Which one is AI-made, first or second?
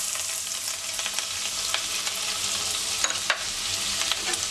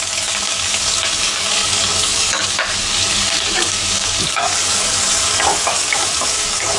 second